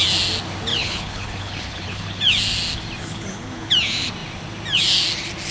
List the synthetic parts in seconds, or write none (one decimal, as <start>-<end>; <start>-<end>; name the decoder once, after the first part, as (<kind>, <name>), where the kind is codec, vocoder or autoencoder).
0.7-2.2 (codec, HILCodec); 3.0-3.7